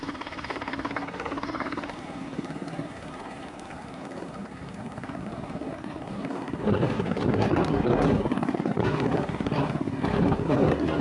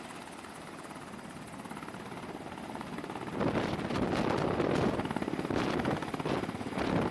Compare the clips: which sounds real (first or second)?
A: second